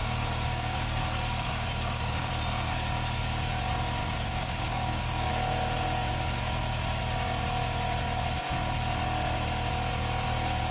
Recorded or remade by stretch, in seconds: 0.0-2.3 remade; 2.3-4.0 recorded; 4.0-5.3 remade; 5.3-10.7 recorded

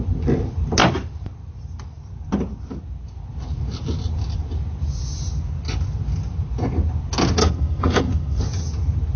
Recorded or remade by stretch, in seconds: 0.0-7.4 recorded; 7.4-8.4 remade; 8.4-9.2 recorded

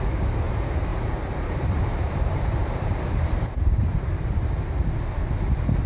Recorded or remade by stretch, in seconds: 0.0-0.9 recorded; 0.9-4.3 remade; 4.3-5.9 recorded

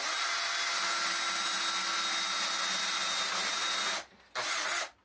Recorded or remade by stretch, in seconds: 0.0-5.0 recorded

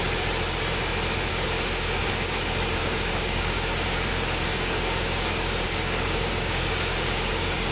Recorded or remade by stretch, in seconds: 0.0-1.3 recorded; 1.3-2.1 remade; 2.1-2.8 recorded; 2.8-7.7 remade

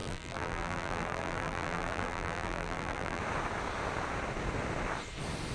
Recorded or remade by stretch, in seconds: 0.0-3.2 remade; 3.2-5.5 recorded

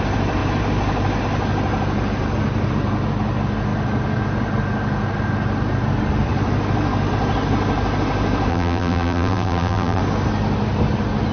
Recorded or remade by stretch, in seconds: 0.0-8.5 recorded; 8.5-10.0 remade; 10.0-11.3 recorded